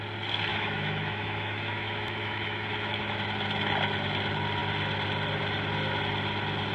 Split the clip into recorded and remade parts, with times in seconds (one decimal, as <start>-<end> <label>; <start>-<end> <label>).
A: 0.0-0.5 recorded; 0.5-3.0 remade; 3.0-6.7 recorded